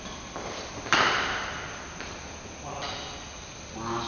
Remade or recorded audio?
recorded